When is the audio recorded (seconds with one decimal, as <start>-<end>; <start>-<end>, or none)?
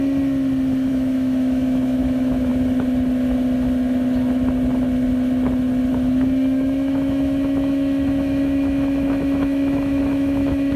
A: 0.0-0.9; 2.5-5.9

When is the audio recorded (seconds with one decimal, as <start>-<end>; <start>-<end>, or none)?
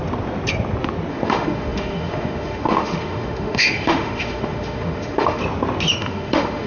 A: 0.0-1.1; 5.4-5.9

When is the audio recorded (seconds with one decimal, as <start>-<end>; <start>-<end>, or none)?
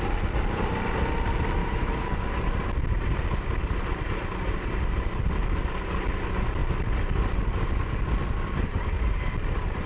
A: 0.0-1.6; 2.1-9.9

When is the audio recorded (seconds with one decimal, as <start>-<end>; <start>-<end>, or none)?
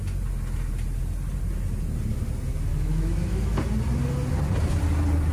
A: 0.0-2.7; 3.6-5.3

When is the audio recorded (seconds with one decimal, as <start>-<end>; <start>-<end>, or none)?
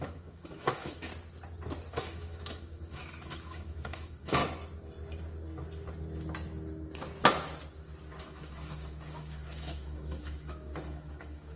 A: 1.1-1.9; 4.4-8.2